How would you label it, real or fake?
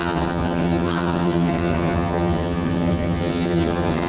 fake